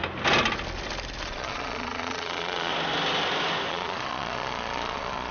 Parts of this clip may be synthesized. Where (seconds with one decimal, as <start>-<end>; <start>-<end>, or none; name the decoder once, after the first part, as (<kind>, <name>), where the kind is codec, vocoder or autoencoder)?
1.2-2.7 (vocoder, Vocos); 3.7-5.3

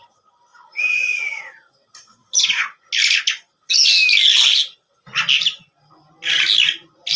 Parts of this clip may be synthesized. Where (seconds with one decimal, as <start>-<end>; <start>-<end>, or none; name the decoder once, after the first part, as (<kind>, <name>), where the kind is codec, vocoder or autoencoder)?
0.5-1.4 (vocoder, Vocos); 2.2-2.9

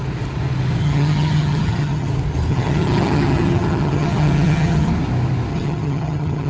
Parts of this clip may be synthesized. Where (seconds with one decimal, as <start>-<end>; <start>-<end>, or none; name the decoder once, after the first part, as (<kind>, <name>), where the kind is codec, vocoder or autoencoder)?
0.8-2.1 (vocoder, HiFi-GAN); 2.5-4.9; 5.5-6.5

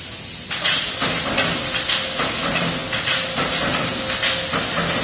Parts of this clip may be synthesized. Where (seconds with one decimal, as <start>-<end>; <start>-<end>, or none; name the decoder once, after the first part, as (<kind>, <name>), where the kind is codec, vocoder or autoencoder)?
none